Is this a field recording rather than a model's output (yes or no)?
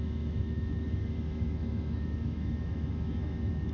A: no